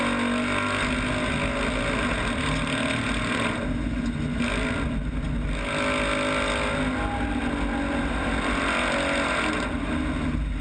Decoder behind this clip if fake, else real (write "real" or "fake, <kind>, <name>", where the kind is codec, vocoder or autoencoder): real